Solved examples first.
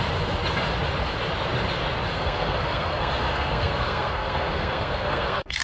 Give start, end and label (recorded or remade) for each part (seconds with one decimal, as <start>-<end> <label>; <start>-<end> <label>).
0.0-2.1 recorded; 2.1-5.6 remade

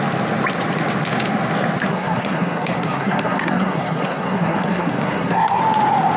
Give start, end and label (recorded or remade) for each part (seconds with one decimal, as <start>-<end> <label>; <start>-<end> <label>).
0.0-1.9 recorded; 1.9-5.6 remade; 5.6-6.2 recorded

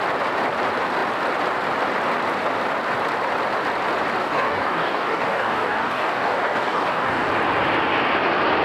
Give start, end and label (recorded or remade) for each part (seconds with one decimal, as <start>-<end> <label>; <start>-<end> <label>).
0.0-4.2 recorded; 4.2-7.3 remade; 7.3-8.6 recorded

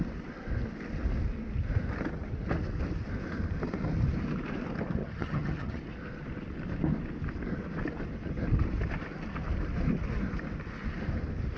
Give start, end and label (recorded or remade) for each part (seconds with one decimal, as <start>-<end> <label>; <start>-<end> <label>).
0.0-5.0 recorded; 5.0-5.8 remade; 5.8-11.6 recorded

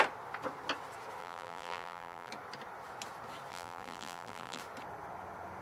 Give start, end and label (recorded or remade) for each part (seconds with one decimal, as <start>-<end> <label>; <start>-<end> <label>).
0.0-1.2 recorded; 1.2-2.3 remade; 2.3-3.5 recorded; 3.5-4.6 remade; 4.6-5.6 recorded

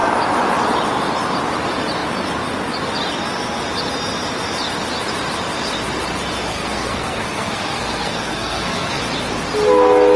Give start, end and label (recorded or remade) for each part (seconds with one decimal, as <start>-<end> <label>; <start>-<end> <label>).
0.0-6.5 recorded; 6.5-9.0 remade; 9.0-10.2 recorded

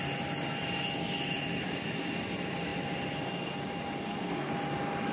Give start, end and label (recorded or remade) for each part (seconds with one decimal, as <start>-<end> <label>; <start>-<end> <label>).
0.0-4.0 recorded; 4.0-4.5 remade; 4.5-5.1 recorded

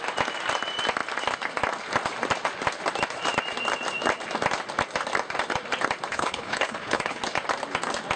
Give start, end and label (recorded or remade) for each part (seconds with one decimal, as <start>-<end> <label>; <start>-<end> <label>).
0.0-6.1 recorded; 6.1-7.2 remade; 7.2-8.2 recorded